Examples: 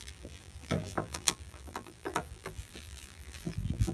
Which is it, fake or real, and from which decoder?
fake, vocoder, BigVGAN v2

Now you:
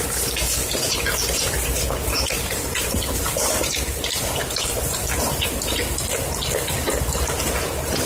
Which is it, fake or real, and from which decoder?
real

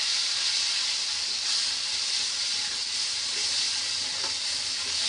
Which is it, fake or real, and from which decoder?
real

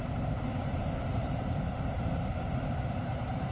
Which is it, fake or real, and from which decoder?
fake, vocoder, BigVGAN v2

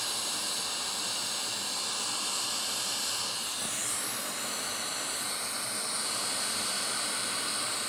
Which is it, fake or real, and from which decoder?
fake, vocoder, BigVGAN v2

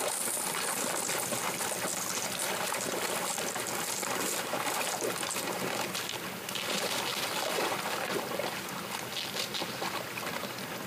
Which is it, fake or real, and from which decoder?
real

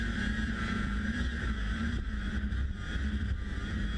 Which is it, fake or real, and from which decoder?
fake, vocoder, BigVGAN v2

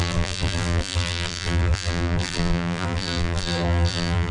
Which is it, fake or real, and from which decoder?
fake, vocoder, BigVGAN v2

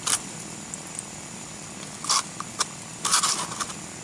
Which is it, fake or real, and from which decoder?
real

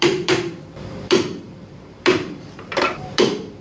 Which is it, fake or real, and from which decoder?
fake, vocoder, BigVGAN v2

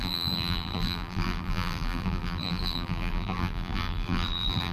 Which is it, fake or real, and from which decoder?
fake, vocoder, BigVGAN v2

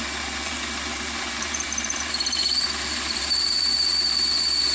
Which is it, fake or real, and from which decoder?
fake, vocoder, BigVGAN v2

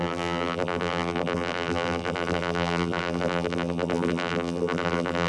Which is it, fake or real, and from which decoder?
fake, vocoder, BigVGAN v2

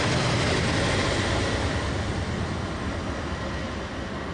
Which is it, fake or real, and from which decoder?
real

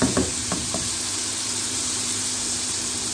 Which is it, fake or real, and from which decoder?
fake, vocoder, BigVGAN v2